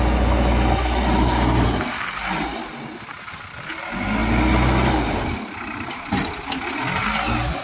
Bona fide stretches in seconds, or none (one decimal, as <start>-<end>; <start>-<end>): 0.0-7.6